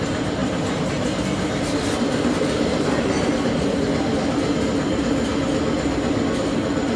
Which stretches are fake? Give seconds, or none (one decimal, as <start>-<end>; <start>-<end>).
none